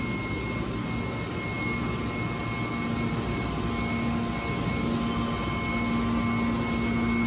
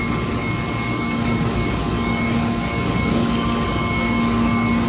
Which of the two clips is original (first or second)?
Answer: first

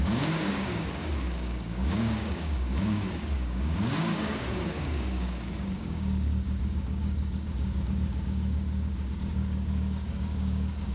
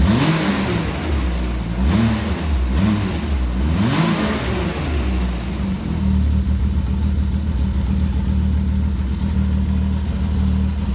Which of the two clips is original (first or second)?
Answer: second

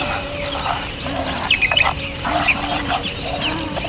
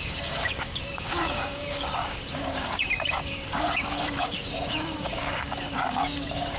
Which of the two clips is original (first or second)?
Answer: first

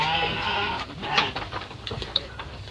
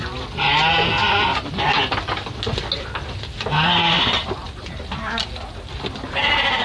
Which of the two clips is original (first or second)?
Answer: second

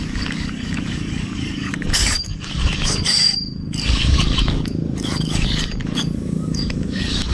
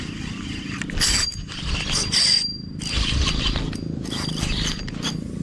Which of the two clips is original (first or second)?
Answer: second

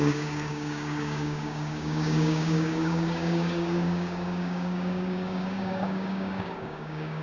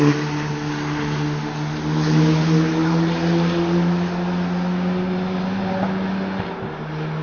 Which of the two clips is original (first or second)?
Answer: second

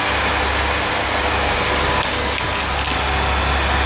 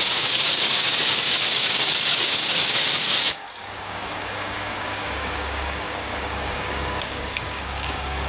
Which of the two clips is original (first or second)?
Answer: first